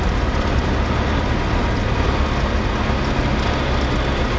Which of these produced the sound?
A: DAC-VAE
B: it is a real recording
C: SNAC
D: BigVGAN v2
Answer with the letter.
B